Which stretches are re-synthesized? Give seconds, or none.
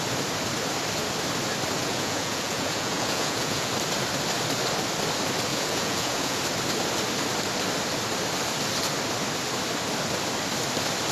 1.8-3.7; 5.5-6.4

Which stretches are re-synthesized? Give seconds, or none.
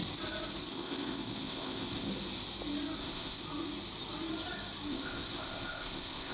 0.7-2.1; 3.0-3.4; 4.9-6.3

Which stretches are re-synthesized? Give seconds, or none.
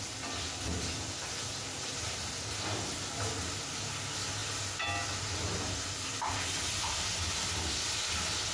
none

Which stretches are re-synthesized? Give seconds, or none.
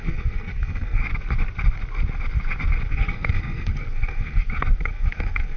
0.0-1.0; 2.9-5.6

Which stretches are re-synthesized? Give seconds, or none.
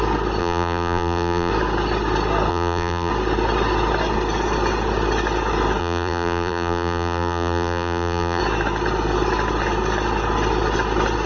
0.4-1.5; 2.5-3.1; 5.8-8.4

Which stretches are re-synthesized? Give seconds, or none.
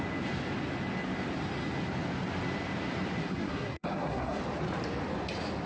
3.2-4.4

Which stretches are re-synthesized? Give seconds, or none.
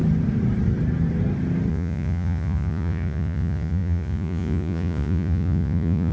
1.7-6.1